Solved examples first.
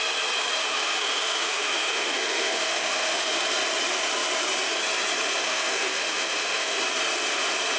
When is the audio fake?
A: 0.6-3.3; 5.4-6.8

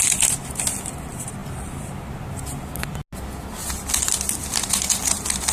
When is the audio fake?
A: none

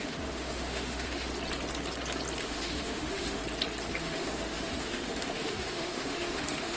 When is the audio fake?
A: 0.0-1.3; 2.4-3.4; 4.0-6.8

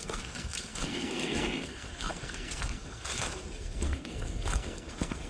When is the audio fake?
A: 0.0-5.3